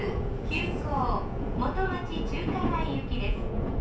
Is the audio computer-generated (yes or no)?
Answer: yes